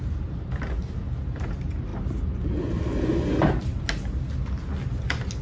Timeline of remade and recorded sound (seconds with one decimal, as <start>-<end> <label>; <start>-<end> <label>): 0.0-5.4 recorded